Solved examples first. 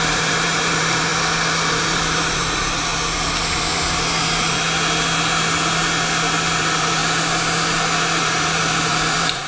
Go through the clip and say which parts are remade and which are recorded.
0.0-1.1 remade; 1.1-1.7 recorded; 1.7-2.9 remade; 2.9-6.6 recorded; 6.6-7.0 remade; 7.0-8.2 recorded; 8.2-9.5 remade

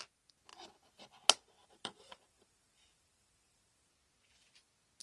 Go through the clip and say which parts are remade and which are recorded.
0.0-1.6 recorded; 1.6-3.9 remade; 3.9-5.0 recorded

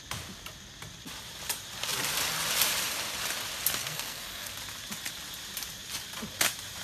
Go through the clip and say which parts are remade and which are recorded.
0.0-3.8 recorded; 3.8-4.5 remade; 4.5-6.8 recorded